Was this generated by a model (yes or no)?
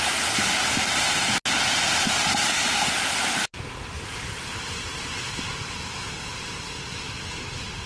no